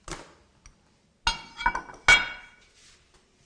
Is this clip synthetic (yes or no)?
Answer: no